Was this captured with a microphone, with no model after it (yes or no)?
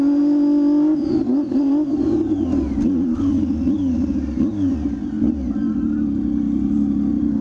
yes